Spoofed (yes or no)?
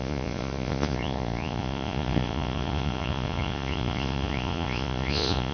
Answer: yes